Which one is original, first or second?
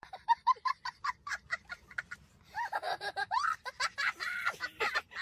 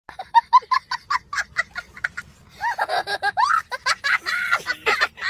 second